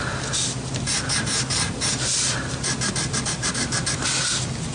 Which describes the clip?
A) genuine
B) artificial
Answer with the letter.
A